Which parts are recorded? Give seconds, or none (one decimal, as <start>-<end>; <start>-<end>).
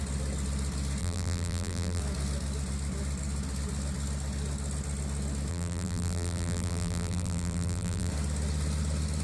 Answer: 0.0-1.0; 2.0-5.5; 8.1-9.2